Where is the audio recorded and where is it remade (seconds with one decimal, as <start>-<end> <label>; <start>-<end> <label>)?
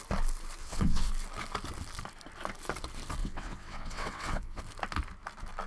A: 0.0-0.6 recorded; 0.6-1.1 remade; 1.1-3.2 recorded; 3.2-4.6 remade; 4.6-5.7 recorded